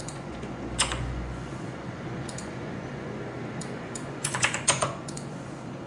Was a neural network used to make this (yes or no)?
yes